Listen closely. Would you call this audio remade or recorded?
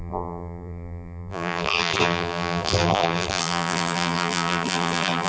remade